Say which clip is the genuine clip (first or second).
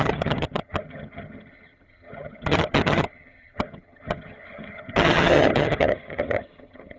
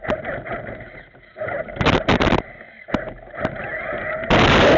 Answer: second